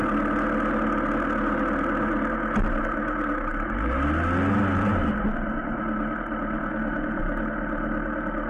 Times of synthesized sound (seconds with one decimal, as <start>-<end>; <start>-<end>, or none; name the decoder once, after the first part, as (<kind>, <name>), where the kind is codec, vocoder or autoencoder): none